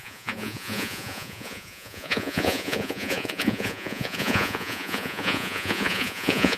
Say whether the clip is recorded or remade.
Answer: remade